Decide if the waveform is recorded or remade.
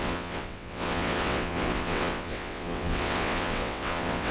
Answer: remade